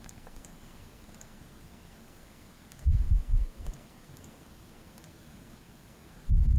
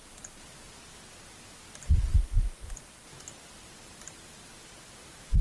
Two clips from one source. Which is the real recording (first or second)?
second